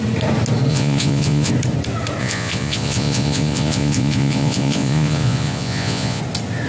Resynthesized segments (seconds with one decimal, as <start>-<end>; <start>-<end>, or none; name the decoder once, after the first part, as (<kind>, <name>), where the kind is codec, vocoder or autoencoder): 0.7-1.5 (vocoder, Vocos); 2.2-6.2